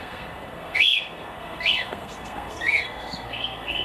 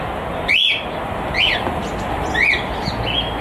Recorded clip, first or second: second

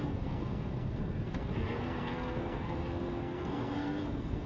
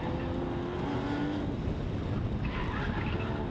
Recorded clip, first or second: second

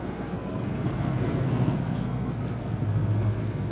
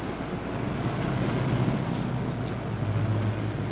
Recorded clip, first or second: second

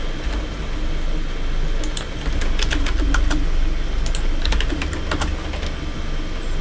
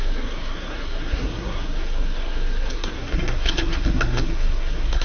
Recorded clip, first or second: first